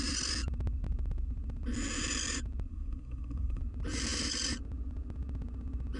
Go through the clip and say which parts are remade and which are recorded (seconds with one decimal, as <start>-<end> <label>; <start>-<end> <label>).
0.0-2.7 recorded; 2.7-3.6 remade; 3.6-6.0 recorded